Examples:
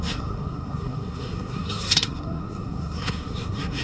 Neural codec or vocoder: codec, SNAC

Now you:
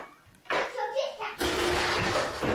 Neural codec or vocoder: none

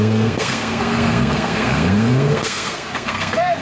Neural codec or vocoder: codec, SNAC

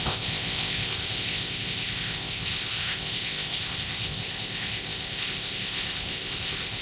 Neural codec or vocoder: codec, ZipCodec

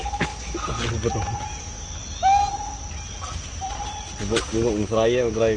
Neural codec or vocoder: none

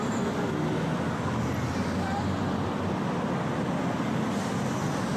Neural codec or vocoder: none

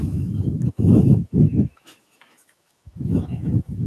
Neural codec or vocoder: autoencoder, DAC-VAE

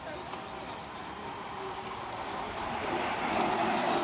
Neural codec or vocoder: none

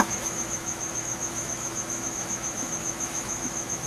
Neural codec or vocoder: autoencoder, DAC-VAE